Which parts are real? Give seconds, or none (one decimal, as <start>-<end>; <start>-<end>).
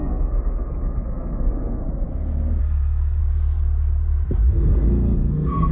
1.8-2.6; 3.2-4.5